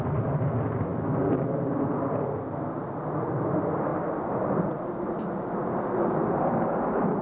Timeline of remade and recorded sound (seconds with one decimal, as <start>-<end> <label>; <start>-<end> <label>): 0.0-7.2 recorded